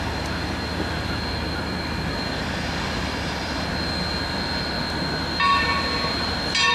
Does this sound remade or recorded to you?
recorded